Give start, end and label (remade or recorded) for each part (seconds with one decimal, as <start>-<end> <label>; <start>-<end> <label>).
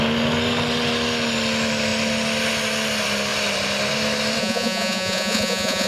0.0-4.4 recorded; 4.4-5.9 remade